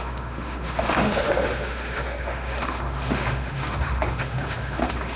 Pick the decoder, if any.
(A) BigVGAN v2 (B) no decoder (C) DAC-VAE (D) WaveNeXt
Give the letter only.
C